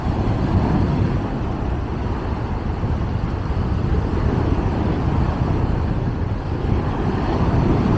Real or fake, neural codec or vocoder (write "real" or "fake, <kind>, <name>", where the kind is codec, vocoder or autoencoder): real